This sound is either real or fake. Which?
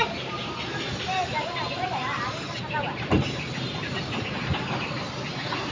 real